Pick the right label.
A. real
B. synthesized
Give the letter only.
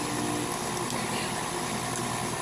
A